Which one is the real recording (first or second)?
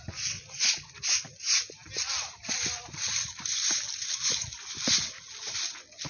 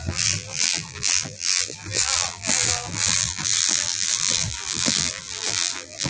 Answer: first